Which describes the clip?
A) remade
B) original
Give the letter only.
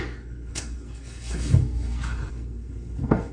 A